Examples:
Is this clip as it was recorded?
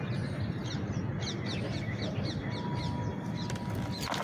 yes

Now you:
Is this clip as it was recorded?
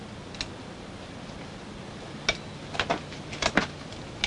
yes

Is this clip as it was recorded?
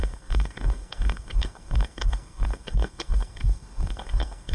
no